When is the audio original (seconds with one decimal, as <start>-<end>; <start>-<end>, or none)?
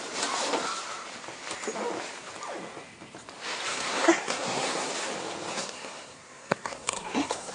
0.0-3.7; 4.9-5.5